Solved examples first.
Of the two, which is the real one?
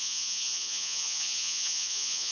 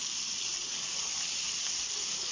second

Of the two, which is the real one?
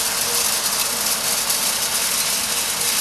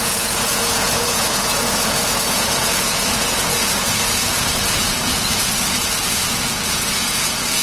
first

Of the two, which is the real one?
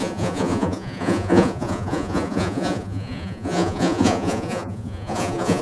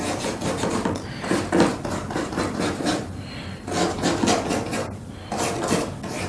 second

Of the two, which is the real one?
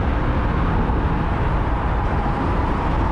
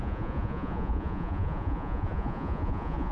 first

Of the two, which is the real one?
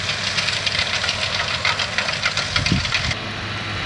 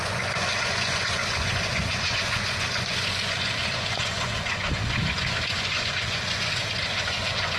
first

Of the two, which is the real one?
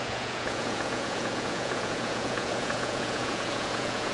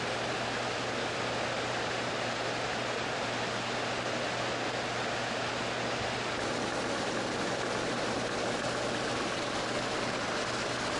second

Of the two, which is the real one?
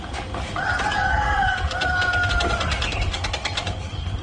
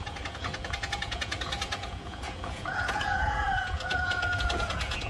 first